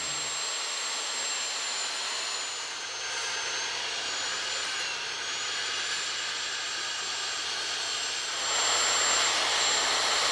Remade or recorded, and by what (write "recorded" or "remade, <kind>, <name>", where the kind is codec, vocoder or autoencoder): recorded